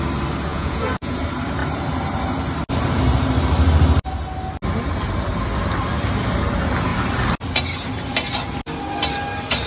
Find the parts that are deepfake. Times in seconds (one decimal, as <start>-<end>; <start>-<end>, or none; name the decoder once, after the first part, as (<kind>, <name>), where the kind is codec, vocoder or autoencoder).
0.5-1.2 (vocoder, Vocos)